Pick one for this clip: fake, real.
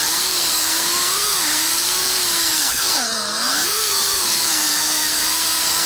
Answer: fake